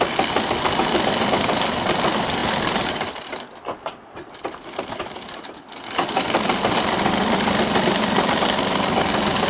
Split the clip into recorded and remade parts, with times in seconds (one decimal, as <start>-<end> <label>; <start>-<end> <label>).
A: 0.0-9.5 recorded